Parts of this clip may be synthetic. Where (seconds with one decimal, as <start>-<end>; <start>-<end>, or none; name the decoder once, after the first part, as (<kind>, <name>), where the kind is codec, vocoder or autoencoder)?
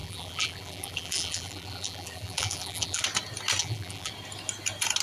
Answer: 0.0-3.0 (vocoder, BigVGAN v2); 3.6-4.1